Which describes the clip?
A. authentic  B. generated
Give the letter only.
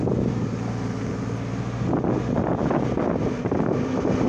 A